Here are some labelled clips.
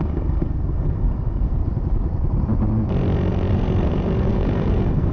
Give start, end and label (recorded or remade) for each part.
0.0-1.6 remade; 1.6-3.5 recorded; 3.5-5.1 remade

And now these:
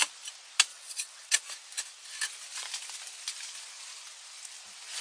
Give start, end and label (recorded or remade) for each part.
0.0-0.7 recorded; 0.7-1.4 remade; 1.4-5.0 recorded

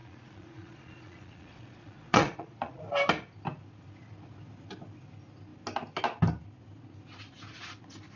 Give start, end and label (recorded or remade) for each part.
0.0-2.8 remade; 2.8-8.2 recorded

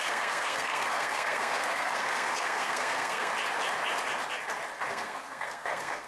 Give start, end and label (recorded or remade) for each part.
0.0-3.3 remade; 3.3-4.9 recorded; 4.9-6.1 remade

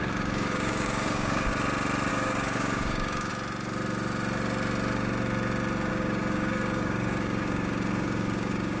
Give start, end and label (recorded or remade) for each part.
0.0-1.5 remade; 1.5-2.1 recorded; 2.1-3.3 remade; 3.3-5.9 recorded; 5.9-8.8 remade

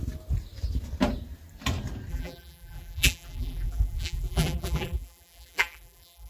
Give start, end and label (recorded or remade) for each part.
0.0-2.1 recorded; 2.1-6.3 remade